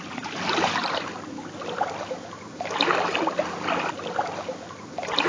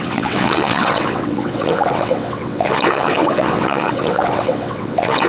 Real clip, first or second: first